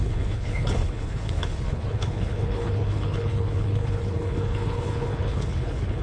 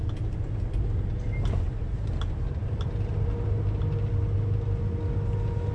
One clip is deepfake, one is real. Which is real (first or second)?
second